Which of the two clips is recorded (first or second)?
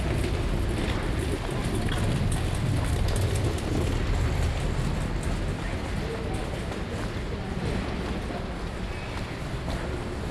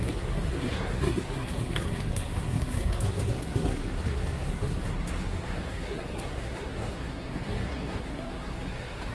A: first